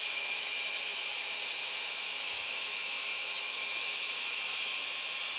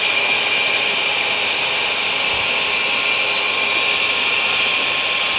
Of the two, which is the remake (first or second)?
first